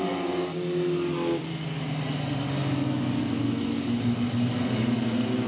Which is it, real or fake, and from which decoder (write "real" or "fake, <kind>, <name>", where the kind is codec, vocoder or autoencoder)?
real